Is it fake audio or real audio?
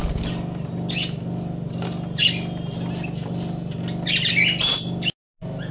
real